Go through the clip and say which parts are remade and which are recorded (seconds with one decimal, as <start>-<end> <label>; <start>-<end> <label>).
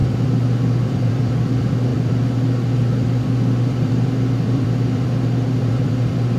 0.0-6.4 remade